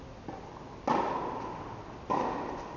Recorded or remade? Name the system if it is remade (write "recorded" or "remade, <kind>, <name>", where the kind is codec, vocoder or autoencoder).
recorded